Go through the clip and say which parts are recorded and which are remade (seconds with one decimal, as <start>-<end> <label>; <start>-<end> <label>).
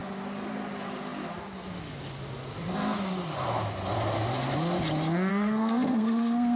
0.0-5.3 recorded; 5.3-6.6 remade